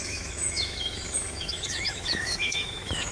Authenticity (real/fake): fake